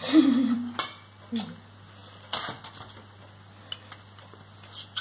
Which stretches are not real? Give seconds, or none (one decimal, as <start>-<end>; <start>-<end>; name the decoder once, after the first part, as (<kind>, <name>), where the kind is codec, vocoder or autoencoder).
none